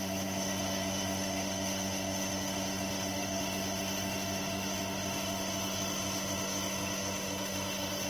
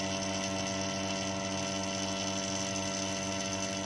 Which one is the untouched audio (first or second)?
second